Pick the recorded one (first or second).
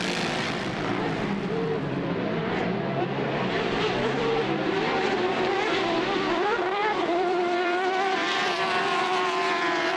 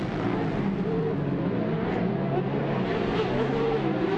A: second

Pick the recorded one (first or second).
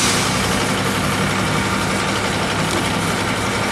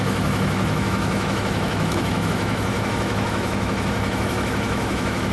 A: first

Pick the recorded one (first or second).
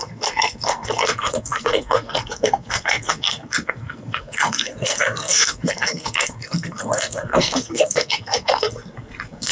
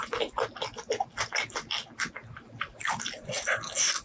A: second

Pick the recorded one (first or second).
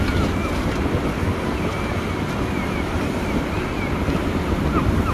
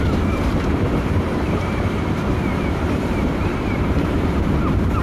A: first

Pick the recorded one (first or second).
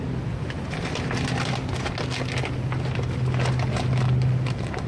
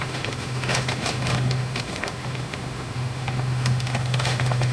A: first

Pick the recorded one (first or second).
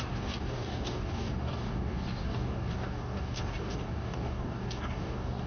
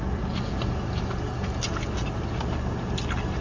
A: second